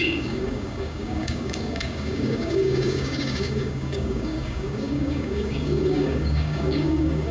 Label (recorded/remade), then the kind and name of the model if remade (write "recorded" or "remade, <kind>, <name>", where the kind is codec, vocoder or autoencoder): remade, codec, DAC